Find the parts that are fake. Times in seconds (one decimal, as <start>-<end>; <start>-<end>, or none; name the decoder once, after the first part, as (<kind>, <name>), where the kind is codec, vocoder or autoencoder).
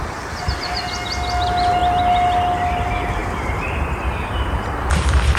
3.2-5.4 (vocoder, BigVGAN v2)